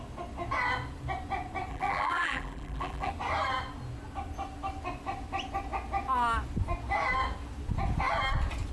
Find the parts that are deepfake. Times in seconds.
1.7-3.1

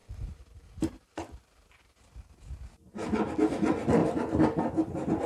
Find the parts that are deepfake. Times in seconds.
0.0-2.4; 4.0-5.3

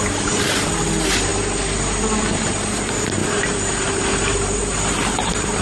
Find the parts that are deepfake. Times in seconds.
4.6-5.6

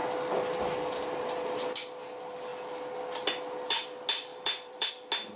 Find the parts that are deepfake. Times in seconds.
4.3-4.9

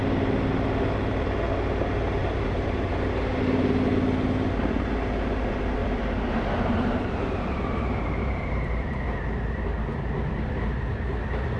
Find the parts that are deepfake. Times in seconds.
2.2-2.9; 5.8-8.9

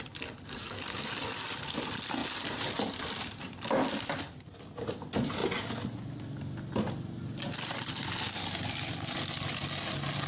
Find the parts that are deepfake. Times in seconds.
none

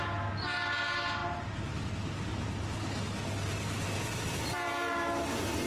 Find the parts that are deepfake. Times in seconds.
none

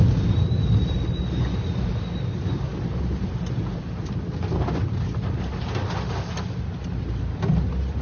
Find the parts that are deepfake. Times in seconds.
none